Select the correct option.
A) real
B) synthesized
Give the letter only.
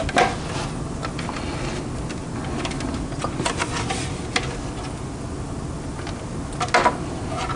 A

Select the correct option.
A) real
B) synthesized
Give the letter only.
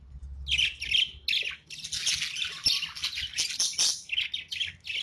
A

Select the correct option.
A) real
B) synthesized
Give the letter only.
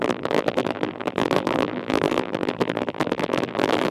B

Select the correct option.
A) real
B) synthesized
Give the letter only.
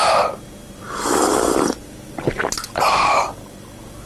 A